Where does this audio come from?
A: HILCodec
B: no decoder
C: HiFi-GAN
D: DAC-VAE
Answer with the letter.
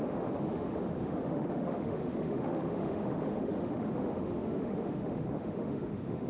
D